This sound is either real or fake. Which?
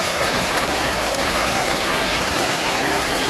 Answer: fake